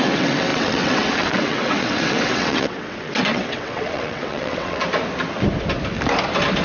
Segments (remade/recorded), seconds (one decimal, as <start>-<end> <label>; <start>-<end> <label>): 0.0-4.8 remade; 4.8-6.6 recorded

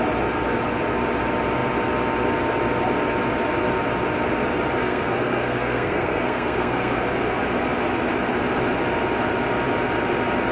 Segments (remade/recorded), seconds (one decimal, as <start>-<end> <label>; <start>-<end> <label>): 0.0-4.8 recorded; 4.8-7.0 remade; 7.0-10.5 recorded